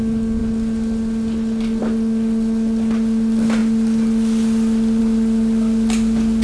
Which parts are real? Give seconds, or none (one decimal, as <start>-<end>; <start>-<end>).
0.0-6.4